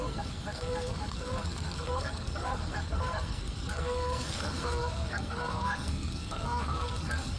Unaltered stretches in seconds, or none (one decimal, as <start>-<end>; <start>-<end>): none